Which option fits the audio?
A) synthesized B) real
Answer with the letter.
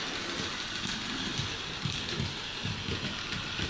B